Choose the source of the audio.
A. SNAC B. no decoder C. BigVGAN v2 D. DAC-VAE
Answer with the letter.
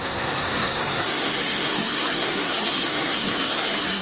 A